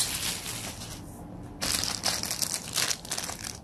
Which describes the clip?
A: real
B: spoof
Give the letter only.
A